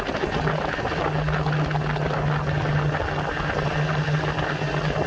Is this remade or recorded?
recorded